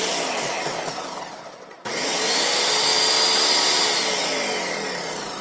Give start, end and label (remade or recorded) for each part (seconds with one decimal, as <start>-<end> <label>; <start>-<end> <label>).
0.0-5.4 recorded

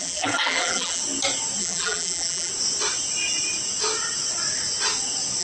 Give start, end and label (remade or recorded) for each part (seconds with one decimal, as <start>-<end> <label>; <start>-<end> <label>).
0.0-1.0 remade; 1.0-1.6 recorded; 1.6-2.5 remade; 2.5-5.4 recorded

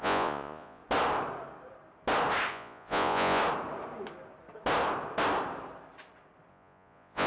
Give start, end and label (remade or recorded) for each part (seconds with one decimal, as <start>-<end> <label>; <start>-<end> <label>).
0.0-0.8 remade; 0.8-2.5 recorded; 2.5-3.4 remade; 3.4-6.5 recorded; 6.5-7.3 remade

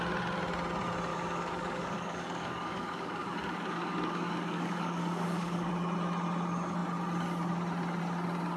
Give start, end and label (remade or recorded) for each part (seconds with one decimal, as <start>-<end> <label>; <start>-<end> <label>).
0.0-1.1 recorded; 1.1-5.7 remade; 5.7-8.6 recorded

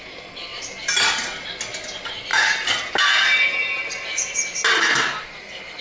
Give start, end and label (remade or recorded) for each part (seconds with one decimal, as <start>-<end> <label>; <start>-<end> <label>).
0.0-0.5 recorded; 0.5-1.5 remade; 1.5-2.3 recorded; 2.3-5.8 remade

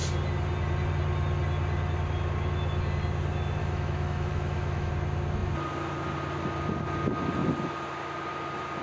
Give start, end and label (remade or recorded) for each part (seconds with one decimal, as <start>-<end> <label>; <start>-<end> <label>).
0.0-3.6 recorded; 3.6-4.9 remade; 4.9-8.8 recorded

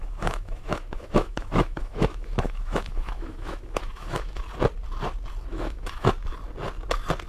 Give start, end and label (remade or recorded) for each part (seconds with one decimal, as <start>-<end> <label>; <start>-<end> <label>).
0.0-4.4 remade; 4.4-5.5 recorded; 5.5-6.1 remade; 6.1-7.3 recorded

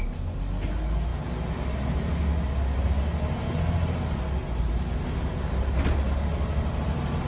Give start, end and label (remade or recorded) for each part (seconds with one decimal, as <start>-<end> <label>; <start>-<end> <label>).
0.0-7.3 recorded